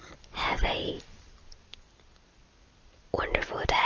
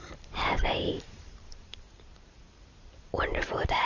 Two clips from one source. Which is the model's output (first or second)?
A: second